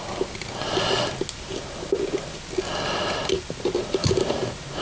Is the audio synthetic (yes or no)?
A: no